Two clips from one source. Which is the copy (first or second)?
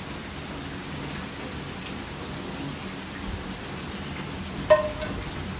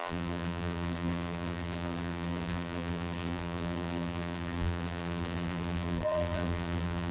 second